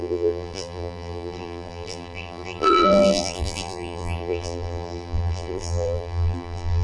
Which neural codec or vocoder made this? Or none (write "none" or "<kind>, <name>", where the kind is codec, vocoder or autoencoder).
vocoder, BigVGAN v2